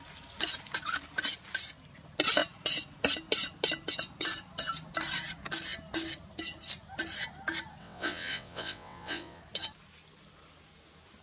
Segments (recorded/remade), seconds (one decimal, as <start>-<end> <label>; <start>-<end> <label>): 0.0-7.8 recorded; 7.8-9.4 remade; 9.4-11.2 recorded